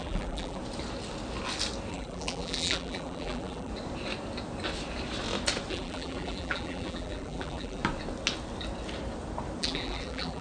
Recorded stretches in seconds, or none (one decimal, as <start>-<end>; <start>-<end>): 0.6-1.9; 3.7-5.7; 7.8-9.6